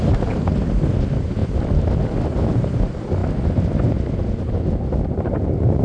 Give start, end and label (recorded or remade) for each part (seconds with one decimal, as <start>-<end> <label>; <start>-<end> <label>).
0.0-5.8 recorded